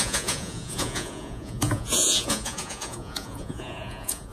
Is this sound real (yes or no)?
no